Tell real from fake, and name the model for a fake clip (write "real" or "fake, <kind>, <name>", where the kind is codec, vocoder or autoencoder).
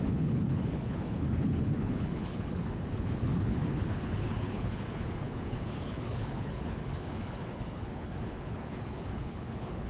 fake, codec, HILCodec